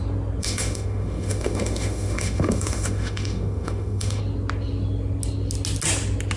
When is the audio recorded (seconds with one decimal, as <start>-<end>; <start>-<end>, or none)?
0.0-0.4; 4.2-6.4